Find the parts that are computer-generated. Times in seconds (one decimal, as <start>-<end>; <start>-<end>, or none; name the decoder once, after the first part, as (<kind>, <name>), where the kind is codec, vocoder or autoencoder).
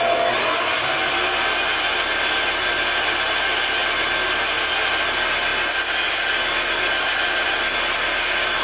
none